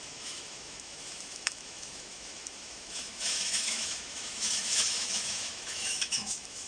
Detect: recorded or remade remade